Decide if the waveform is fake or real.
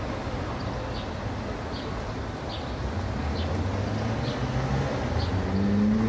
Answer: real